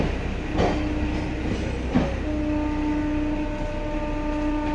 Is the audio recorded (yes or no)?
yes